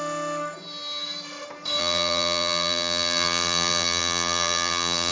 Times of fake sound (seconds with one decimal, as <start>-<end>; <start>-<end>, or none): 1.8-5.1